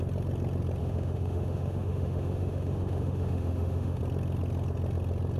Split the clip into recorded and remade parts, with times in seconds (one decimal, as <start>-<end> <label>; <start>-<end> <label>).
0.0-0.8 recorded; 0.8-4.0 remade; 4.0-5.4 recorded